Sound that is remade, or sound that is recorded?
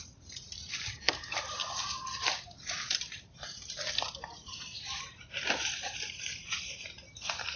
remade